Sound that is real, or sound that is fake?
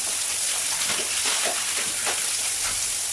real